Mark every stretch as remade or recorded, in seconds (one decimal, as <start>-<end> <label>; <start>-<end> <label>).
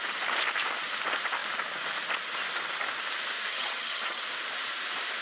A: 0.0-3.5 recorded; 3.5-4.2 remade; 4.2-5.2 recorded